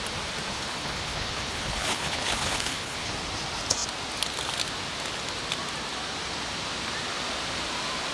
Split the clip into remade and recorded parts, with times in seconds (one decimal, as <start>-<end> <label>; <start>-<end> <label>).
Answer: 0.0-0.5 recorded; 0.5-3.1 remade; 3.1-8.1 recorded